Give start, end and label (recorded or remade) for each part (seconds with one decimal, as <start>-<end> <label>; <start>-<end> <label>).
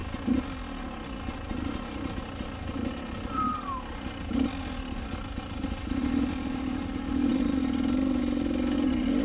0.0-9.2 recorded